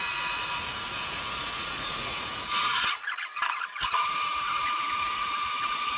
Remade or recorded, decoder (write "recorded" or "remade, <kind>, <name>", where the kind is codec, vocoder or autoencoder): remade, vocoder, Vocos